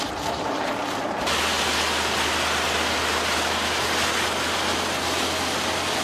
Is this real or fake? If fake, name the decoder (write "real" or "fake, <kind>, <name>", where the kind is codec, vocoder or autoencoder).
real